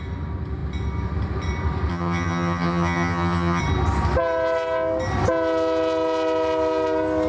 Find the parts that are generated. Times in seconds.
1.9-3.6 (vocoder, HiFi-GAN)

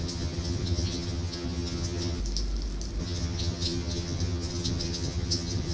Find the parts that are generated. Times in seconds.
0.0-2.2 (vocoder, HiFi-GAN); 3.0-5.7